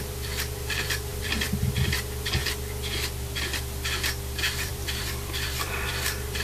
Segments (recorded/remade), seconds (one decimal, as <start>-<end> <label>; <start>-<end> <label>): 0.0-2.4 remade; 2.4-4.4 recorded; 4.4-6.4 remade